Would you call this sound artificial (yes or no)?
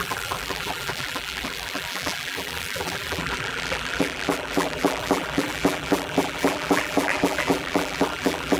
yes